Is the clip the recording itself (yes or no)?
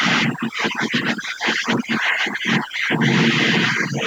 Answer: yes